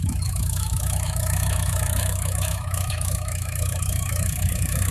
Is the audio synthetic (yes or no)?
yes